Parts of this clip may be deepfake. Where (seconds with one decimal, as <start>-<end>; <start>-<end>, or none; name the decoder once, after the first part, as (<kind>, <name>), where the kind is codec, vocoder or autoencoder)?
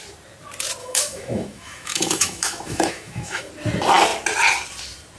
0.8-3.5 (autoencoder, DAC-VAE)